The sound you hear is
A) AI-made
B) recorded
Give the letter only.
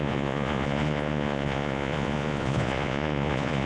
A